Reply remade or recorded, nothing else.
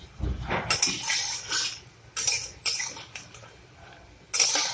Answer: recorded